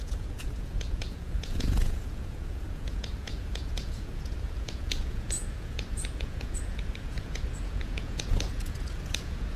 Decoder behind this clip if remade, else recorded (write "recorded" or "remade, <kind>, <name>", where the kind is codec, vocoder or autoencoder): remade, vocoder, Vocos